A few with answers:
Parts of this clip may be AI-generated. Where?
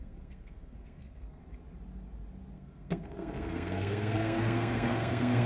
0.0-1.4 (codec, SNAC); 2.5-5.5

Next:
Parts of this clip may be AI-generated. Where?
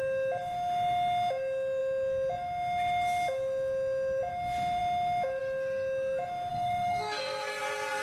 6.5-7.6 (codec, SNAC)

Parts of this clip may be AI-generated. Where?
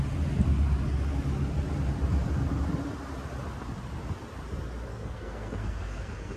4.9-6.4 (codec, SNAC)